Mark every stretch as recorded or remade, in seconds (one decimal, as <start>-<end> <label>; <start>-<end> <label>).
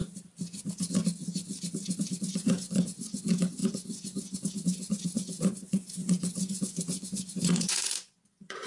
0.0-2.1 recorded; 2.1-8.7 remade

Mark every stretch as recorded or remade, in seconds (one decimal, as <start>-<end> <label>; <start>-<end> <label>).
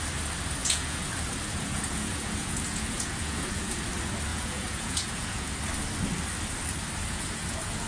0.0-0.6 recorded; 0.6-1.1 remade; 1.1-1.5 recorded; 1.5-3.8 remade; 3.8-4.3 recorded; 4.3-5.5 remade; 5.5-7.0 recorded; 7.0-7.9 remade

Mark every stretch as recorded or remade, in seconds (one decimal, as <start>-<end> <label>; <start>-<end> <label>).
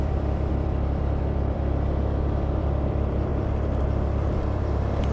0.0-3.3 remade; 3.3-3.8 recorded; 3.8-5.1 remade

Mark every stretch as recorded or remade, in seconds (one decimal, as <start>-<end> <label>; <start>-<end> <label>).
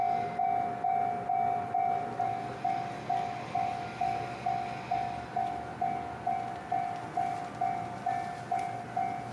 0.0-9.3 recorded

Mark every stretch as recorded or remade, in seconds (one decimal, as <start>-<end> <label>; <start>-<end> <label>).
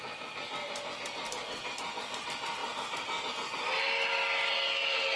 0.0-5.2 recorded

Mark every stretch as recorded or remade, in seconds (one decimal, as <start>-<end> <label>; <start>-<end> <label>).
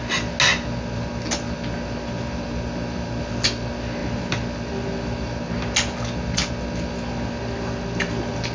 0.0-8.5 recorded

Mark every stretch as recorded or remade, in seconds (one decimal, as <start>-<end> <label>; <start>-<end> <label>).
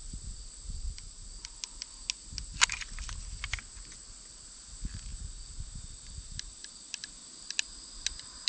0.0-8.5 recorded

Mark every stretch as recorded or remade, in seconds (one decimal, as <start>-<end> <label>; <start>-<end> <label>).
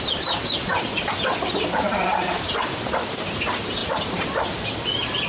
0.0-3.8 recorded; 3.8-4.7 remade; 4.7-5.3 recorded